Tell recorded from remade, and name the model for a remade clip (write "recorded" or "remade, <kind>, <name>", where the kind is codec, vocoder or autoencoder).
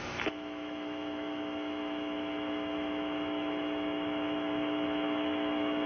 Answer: remade, autoencoder, DAC-VAE